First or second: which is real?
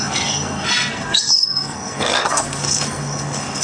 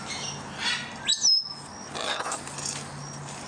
second